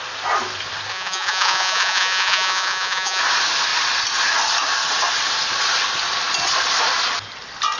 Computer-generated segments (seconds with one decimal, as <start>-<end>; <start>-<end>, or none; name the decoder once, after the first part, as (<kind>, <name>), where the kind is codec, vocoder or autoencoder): 0.9-3.2 (vocoder, Vocos)